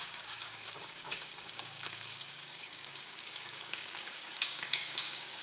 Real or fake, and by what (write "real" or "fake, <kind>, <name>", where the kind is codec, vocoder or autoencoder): fake, codec, DAC